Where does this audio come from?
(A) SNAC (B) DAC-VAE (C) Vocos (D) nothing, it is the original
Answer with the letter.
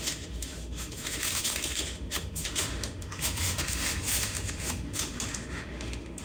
B